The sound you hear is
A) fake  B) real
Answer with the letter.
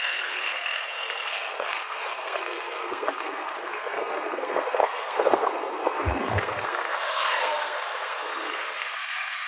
A